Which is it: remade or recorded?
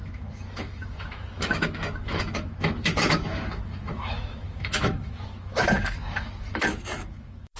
remade